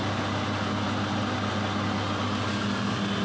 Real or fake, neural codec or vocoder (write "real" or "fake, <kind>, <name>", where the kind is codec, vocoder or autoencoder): real